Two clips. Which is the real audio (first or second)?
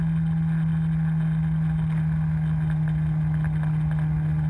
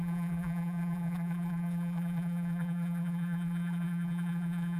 first